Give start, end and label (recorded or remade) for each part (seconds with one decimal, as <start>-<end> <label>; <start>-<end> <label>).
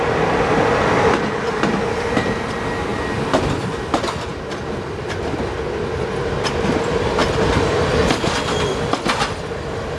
0.0-10.0 recorded